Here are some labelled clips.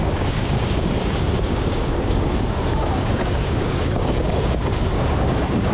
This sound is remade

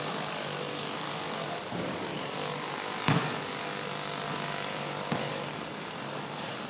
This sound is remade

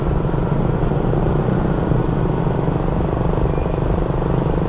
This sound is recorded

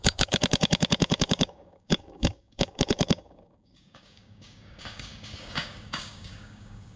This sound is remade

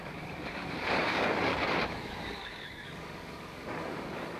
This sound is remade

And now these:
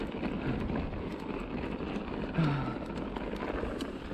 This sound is recorded